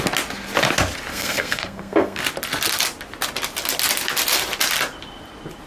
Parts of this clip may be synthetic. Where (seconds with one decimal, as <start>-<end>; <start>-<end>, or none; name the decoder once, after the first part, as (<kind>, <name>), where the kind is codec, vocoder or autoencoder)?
1.1-2.2 (codec, SNAC)